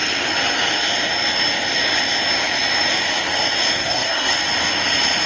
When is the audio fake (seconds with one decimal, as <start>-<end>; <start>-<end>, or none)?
3.8-4.3